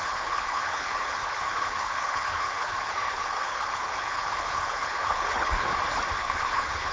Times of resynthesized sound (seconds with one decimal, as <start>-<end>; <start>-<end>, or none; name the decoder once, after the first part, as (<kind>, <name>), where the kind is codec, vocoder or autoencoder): 0.0-5.7 (codec, HILCodec); 6.2-6.9